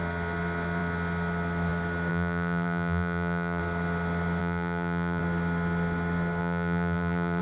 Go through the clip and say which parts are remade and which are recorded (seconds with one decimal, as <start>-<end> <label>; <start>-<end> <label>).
0.0-2.1 recorded; 2.1-3.6 remade; 3.6-4.4 recorded; 4.4-5.2 remade; 5.2-6.4 recorded; 6.4-7.4 remade